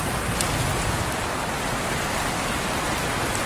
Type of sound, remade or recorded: recorded